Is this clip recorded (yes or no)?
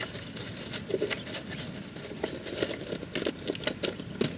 yes